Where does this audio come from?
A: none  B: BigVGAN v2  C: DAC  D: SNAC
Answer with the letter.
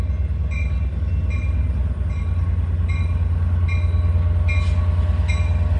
A